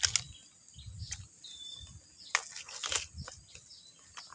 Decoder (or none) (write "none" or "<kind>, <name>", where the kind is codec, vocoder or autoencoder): none